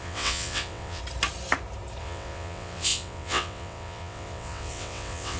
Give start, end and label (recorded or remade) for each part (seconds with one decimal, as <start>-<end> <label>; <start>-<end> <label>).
0.0-1.0 remade; 1.0-2.0 recorded; 2.0-5.4 remade